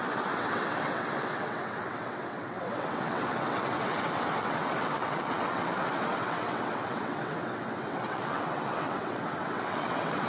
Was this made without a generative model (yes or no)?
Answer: no